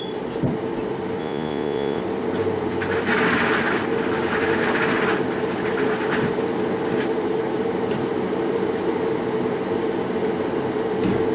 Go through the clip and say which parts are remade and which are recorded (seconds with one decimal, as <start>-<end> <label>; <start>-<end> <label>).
0.0-1.2 recorded; 1.2-2.0 remade; 2.0-11.3 recorded